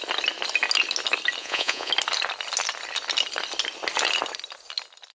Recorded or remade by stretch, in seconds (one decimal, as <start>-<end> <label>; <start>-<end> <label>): 0.0-1.4 recorded; 1.4-1.9 remade; 1.9-5.2 recorded

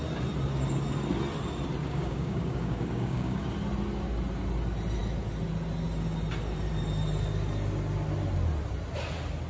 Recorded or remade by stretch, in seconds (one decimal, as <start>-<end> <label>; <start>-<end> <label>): 0.0-1.8 recorded; 1.8-3.4 remade; 3.4-9.5 recorded

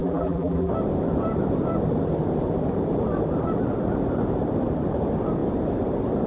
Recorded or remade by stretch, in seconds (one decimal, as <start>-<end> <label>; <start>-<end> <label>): 0.0-0.7 remade; 0.7-6.3 recorded

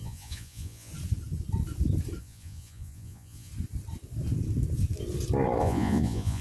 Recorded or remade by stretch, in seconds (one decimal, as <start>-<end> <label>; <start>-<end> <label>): 0.0-0.9 remade; 0.9-2.2 recorded; 2.2-3.5 remade; 3.5-5.6 recorded; 5.6-6.4 remade

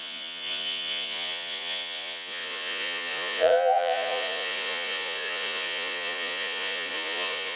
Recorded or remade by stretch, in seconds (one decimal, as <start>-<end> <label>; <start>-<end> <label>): 0.0-7.6 remade